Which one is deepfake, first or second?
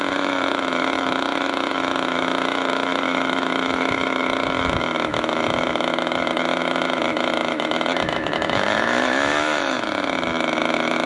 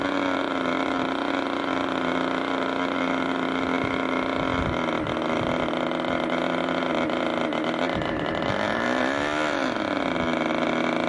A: first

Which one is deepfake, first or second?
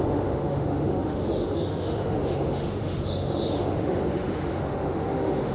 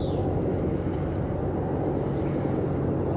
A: first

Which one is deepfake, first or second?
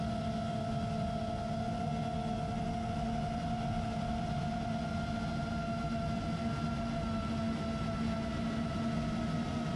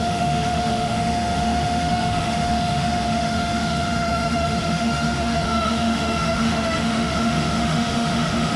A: second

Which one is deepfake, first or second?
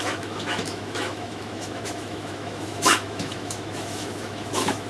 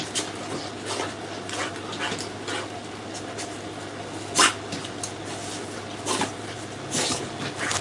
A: first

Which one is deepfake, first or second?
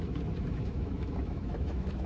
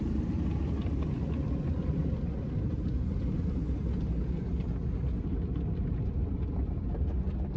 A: first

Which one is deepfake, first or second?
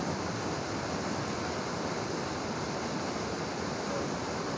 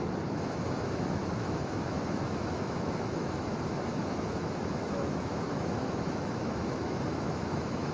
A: second